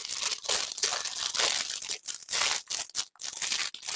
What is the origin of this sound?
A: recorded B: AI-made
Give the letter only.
A